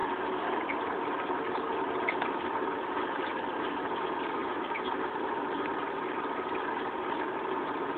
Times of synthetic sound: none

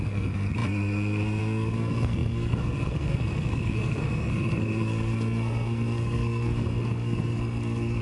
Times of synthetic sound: 0.0-8.0 (codec, SNAC)